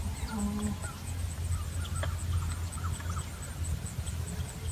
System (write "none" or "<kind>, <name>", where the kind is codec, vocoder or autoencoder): none